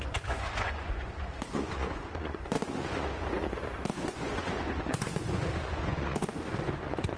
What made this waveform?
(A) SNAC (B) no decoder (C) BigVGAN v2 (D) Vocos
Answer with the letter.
D